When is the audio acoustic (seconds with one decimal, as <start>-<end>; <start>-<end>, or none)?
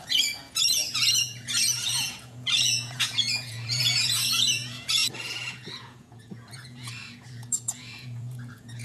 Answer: none